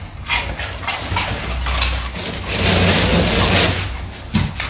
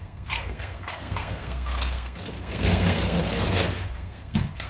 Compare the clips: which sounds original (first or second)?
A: first